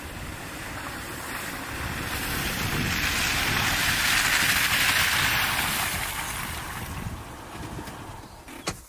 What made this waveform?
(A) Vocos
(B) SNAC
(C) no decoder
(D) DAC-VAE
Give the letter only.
C